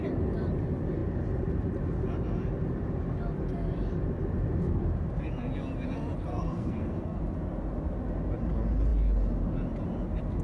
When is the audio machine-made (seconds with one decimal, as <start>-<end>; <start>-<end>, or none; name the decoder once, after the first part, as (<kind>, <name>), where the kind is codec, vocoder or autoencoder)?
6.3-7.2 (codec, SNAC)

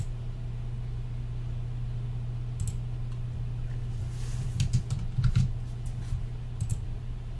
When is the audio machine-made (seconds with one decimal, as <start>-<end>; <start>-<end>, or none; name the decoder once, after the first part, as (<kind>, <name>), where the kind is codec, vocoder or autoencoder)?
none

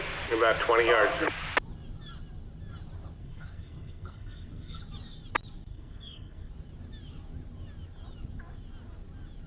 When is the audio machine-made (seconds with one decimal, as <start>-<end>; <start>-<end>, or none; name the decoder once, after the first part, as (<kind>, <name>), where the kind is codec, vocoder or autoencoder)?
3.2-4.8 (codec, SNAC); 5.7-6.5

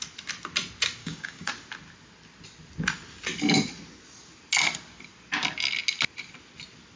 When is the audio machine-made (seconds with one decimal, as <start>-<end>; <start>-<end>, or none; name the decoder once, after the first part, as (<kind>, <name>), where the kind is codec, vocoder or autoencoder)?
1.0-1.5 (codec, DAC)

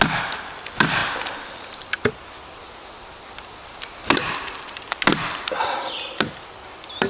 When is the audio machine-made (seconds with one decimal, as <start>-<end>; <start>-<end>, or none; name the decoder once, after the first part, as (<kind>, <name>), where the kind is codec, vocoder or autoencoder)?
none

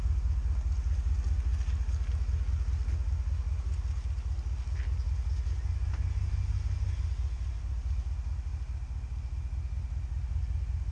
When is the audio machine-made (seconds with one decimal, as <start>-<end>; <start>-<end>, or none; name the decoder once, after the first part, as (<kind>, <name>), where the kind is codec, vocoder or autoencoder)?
none

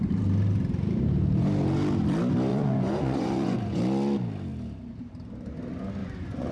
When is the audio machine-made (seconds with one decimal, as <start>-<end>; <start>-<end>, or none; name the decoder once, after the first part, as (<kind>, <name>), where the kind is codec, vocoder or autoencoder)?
2.5-3.8 (vocoder, Vocos); 6.0-6.5